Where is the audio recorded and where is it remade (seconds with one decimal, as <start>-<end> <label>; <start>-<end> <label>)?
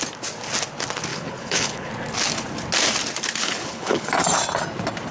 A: 0.0-1.1 recorded; 1.1-1.9 remade; 1.9-3.4 recorded; 3.4-4.1 remade; 4.1-5.1 recorded